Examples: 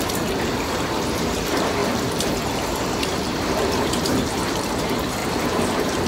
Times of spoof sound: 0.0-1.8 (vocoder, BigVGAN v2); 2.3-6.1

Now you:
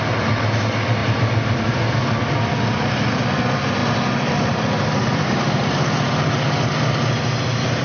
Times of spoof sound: 1.0-2.2 (vocoder, BigVGAN v2); 3.8-6.7

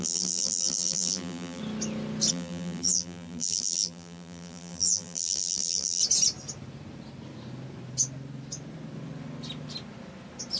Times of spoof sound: 0.0-1.6 (vocoder, BigVGAN v2); 2.3-6.0

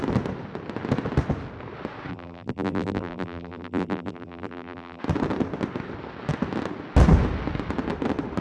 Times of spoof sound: 2.1-5.0 (vocoder, BigVGAN v2)

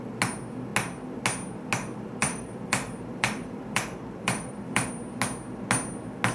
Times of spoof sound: 2.2-4.9 (vocoder, BigVGAN v2)